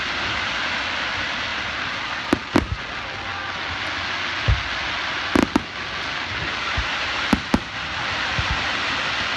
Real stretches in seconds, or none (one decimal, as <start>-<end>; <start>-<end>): 0.0-9.4